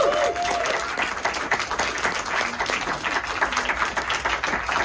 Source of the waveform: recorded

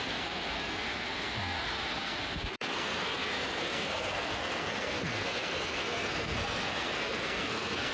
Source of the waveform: remade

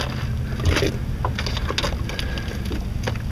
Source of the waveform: recorded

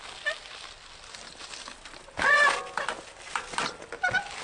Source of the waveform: recorded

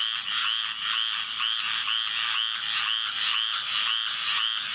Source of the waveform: recorded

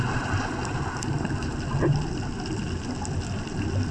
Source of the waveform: recorded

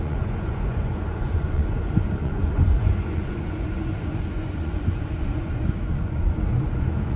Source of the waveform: remade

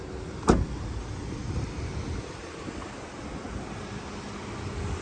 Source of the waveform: recorded